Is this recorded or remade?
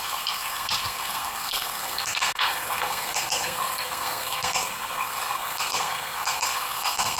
remade